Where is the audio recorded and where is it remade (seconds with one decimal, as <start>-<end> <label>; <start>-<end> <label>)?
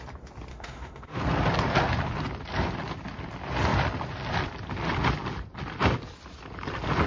0.0-0.5 recorded; 0.5-1.2 remade; 1.2-7.1 recorded